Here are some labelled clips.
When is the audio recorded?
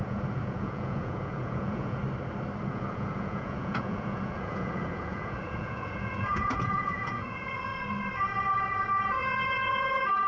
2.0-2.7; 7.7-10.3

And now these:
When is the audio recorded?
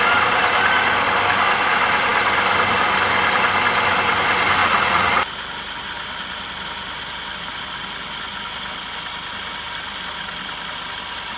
0.0-4.6; 5.2-11.4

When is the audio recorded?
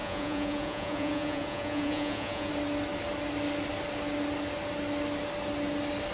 2.5-6.1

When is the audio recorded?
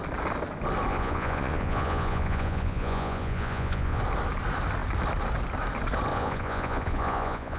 0.0-0.9; 4.0-6.1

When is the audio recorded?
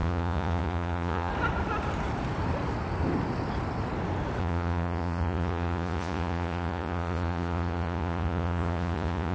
1.3-4.4